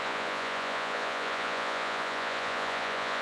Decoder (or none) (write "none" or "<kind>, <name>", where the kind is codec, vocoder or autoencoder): vocoder, Vocos